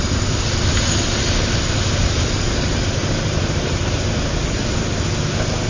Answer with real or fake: real